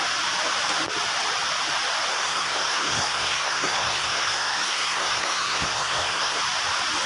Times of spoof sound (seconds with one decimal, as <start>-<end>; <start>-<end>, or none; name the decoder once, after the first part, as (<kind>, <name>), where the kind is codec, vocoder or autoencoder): 2.1-6.4 (codec, SNAC)